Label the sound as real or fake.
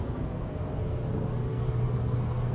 fake